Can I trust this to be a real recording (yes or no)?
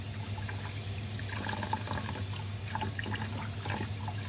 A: yes